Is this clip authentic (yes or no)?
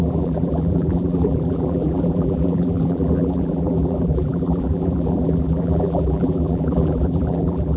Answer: no